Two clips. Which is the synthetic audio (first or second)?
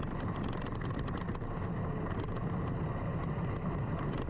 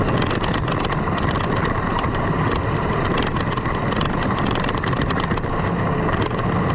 second